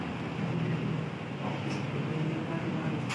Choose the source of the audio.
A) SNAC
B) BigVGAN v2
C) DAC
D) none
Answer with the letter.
D